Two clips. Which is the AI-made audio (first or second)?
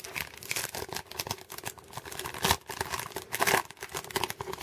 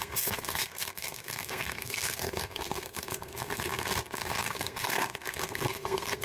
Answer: second